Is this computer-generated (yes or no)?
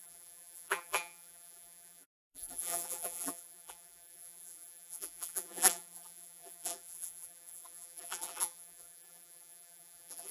yes